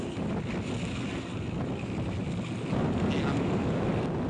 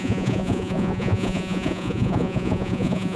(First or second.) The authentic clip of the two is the first